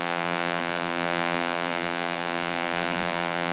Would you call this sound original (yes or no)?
no